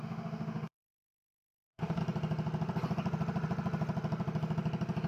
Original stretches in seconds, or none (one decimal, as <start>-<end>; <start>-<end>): 2.0-5.1